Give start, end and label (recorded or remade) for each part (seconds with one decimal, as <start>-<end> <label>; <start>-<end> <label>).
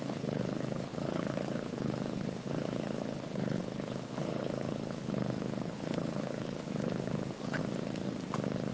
0.0-7.6 remade; 7.6-8.7 recorded